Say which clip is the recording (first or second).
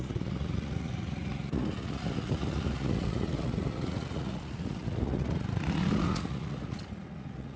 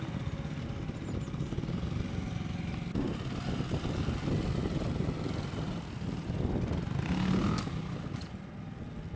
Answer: second